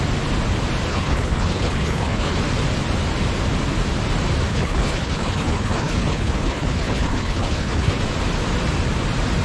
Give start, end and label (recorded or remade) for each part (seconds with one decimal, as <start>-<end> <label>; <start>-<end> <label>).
0.0-0.9 recorded; 0.9-2.4 remade; 2.4-4.5 recorded; 4.5-8.0 remade; 8.0-9.4 recorded